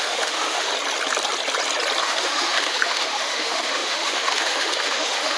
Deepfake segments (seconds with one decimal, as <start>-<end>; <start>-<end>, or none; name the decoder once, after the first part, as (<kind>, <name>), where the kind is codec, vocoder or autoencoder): 0.0-0.7 (autoencoder, DAC-VAE); 2.0-5.4